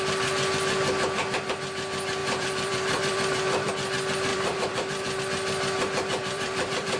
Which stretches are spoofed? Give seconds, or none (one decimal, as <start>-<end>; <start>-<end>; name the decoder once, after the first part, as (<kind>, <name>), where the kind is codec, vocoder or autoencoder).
2.2-3.7 (vocoder, BigVGAN v2); 4.3-5.2; 6.2-7.0